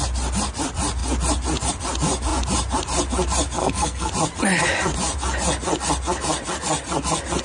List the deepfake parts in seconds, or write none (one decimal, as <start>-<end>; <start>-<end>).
3.6-4.1